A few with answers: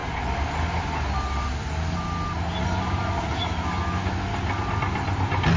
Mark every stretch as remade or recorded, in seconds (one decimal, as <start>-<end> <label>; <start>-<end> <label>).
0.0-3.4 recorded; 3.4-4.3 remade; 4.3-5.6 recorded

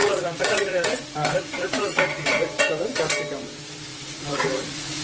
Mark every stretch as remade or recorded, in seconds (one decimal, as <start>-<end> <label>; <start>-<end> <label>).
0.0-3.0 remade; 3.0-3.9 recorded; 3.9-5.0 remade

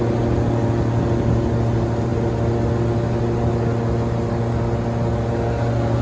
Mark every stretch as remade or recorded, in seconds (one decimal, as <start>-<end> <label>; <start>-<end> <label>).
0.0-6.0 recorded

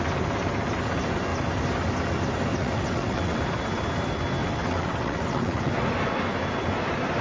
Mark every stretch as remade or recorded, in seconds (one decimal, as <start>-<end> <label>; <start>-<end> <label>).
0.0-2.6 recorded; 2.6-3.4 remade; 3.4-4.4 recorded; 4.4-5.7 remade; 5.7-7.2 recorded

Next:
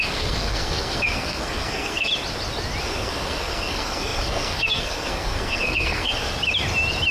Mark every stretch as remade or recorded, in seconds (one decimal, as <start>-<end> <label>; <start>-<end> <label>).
0.0-2.1 remade; 2.1-2.8 recorded; 2.8-6.3 remade; 6.3-7.1 recorded

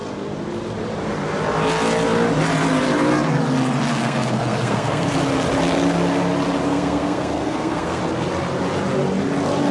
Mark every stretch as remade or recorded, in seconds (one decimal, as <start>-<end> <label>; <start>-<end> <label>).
0.0-3.9 recorded; 3.9-5.1 remade; 5.1-6.7 recorded; 6.7-8.0 remade; 8.0-9.7 recorded

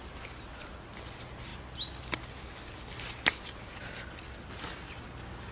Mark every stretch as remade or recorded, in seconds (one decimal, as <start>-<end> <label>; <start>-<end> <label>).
0.0-5.5 recorded

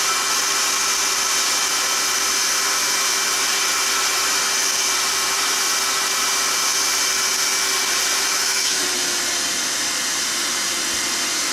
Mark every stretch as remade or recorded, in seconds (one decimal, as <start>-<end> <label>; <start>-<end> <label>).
0.0-8.3 recorded; 8.3-8.8 remade; 8.8-11.5 recorded